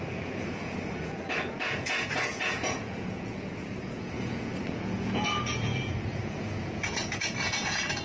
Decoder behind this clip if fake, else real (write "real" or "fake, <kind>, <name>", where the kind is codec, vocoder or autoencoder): fake, vocoder, Vocos